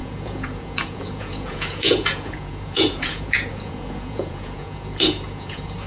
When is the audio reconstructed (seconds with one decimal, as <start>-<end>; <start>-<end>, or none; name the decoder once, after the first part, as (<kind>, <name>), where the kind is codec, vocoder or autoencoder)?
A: 0.0-5.9 (vocoder, Vocos)

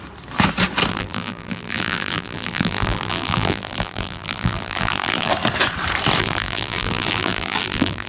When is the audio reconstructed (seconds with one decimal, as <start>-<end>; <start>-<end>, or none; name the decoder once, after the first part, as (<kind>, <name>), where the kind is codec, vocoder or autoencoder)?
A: 0.9-5.3 (vocoder, BigVGAN v2); 6.2-8.1

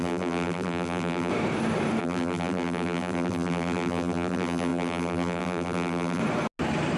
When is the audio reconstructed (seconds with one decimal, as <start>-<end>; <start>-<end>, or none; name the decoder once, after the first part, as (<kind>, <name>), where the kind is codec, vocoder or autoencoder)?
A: 0.0-1.3 (vocoder, BigVGAN v2); 2.0-6.2

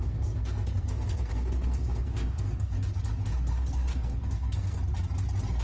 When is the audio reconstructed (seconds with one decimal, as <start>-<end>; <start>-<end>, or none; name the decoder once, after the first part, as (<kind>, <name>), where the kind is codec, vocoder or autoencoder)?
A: 0.0-2.7 (codec, SNAC); 3.5-4.8

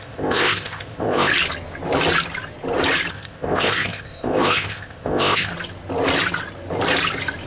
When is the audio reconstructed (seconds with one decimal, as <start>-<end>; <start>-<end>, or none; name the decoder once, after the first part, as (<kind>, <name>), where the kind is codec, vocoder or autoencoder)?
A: 0.0-1.3 (codec, ZipCodec); 3.1-5.5

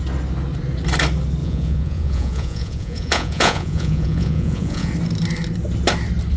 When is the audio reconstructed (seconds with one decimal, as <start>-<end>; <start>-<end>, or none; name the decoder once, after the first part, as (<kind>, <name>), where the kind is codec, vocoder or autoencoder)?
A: 1.4-4.9 (vocoder, Vocos)

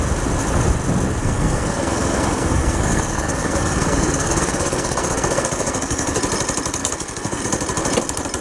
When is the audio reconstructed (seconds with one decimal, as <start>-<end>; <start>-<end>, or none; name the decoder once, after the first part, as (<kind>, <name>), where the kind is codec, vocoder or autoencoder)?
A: 1.2-6.2 (codec, SNAC); 6.8-7.4